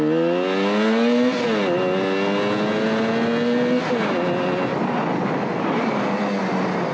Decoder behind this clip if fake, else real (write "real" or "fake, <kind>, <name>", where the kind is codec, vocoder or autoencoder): real